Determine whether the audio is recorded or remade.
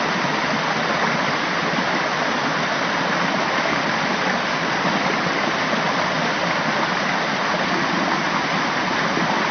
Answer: recorded